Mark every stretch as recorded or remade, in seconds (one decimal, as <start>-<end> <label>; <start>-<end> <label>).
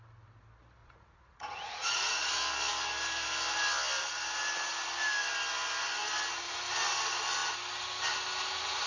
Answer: 0.0-0.8 recorded; 0.8-2.3 remade; 2.3-8.9 recorded